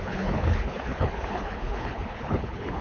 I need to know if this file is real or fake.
fake